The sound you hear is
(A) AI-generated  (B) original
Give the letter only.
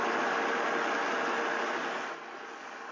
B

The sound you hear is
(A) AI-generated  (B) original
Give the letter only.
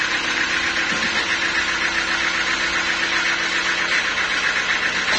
B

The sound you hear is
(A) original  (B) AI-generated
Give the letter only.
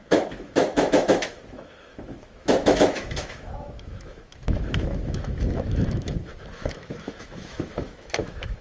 B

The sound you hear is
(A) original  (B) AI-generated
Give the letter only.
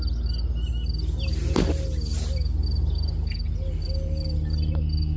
A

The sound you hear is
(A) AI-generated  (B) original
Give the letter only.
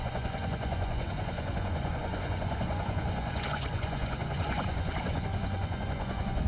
A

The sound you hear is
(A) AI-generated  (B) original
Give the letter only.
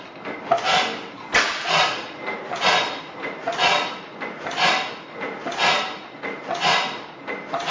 A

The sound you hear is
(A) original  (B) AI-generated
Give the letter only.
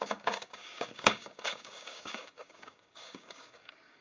B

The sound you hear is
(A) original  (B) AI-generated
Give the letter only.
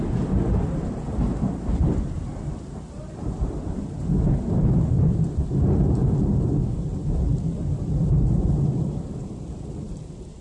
B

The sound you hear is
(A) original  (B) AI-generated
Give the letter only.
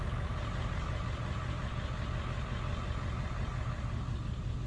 A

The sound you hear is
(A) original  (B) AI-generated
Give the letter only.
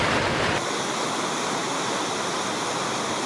A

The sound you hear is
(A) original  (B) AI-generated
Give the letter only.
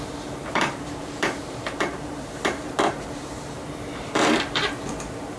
B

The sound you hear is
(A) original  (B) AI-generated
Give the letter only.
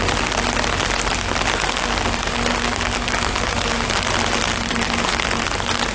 A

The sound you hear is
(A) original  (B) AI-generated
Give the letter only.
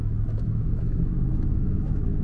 B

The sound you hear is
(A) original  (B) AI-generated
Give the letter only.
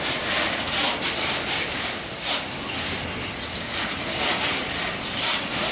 A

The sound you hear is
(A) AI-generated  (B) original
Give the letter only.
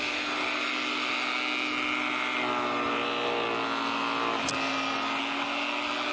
B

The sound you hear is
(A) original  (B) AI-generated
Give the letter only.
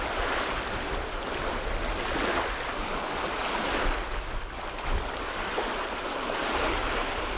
A